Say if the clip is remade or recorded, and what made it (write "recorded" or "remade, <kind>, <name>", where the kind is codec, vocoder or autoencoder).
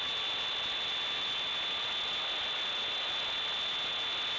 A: recorded